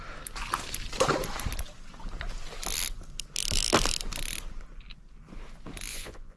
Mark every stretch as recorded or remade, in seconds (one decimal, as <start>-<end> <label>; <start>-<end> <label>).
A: 0.0-5.9 recorded; 5.9-6.4 remade